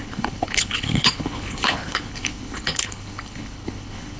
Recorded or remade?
remade